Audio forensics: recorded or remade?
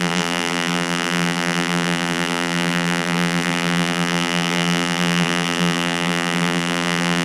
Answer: remade